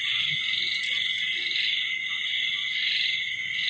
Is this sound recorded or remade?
recorded